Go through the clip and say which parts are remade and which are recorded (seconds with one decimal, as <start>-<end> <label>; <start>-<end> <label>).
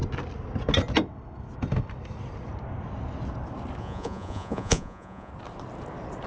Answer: 0.0-3.8 recorded; 3.8-5.3 remade; 5.3-6.3 recorded